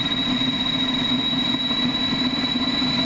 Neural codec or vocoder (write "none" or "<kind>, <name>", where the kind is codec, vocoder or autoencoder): none